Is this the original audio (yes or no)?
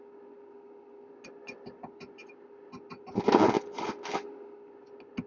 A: yes